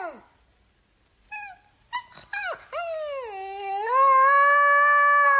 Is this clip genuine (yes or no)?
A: yes